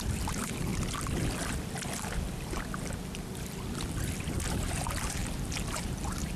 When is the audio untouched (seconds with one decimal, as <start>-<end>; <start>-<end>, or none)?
0.7-4.5; 5.2-5.8